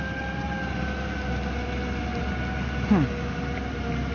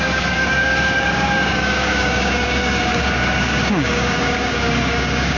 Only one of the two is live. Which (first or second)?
first